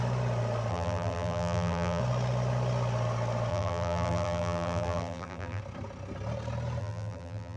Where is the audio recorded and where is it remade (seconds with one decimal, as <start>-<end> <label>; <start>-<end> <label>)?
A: 0.0-0.7 recorded; 0.7-2.0 remade; 2.0-3.5 recorded; 3.5-5.6 remade; 5.6-6.8 recorded; 6.8-7.6 remade